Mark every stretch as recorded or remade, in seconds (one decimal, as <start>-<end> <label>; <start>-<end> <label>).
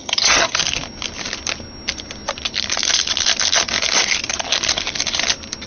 0.0-0.6 remade; 0.6-5.7 recorded